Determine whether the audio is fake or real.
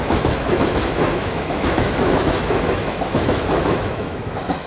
fake